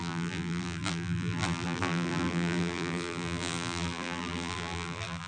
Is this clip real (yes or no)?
no